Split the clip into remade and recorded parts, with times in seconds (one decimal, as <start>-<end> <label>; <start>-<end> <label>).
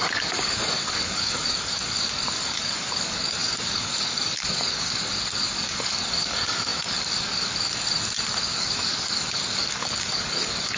0.0-7.7 remade; 7.7-8.4 recorded; 8.4-10.8 remade